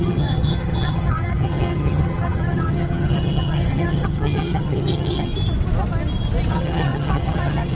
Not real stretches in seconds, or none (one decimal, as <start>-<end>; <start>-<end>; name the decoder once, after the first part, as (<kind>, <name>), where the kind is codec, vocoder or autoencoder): 0.0-5.3 (vocoder, HiFi-GAN); 6.5-7.7